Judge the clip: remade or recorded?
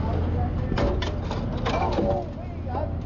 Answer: recorded